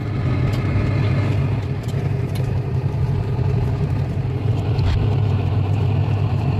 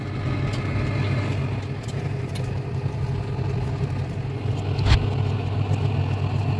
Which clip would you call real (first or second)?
second